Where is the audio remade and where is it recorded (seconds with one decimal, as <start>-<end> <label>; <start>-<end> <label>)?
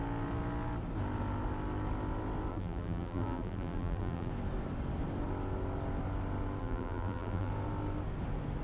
0.0-2.5 recorded; 2.5-4.3 remade; 4.3-6.6 recorded; 6.6-7.5 remade; 7.5-8.6 recorded